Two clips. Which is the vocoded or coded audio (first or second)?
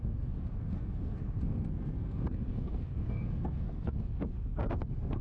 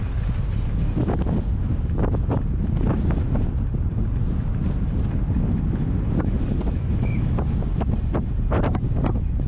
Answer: first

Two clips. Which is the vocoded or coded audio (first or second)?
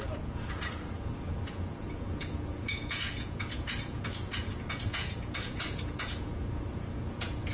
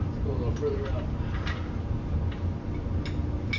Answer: first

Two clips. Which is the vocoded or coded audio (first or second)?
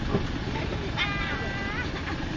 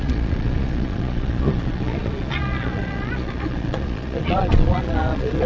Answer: second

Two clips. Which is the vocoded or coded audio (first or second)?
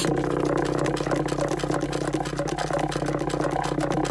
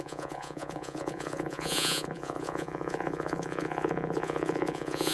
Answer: second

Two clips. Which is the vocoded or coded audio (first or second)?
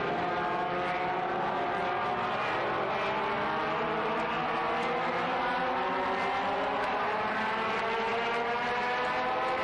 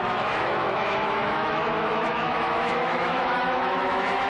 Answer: second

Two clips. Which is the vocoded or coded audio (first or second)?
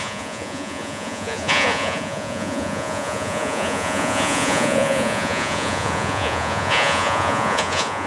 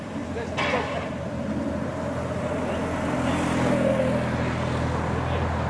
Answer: first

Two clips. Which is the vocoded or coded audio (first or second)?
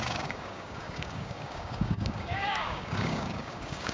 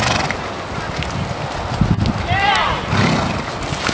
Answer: first